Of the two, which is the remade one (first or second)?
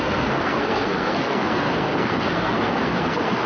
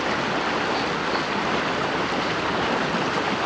first